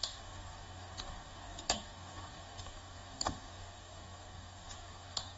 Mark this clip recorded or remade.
remade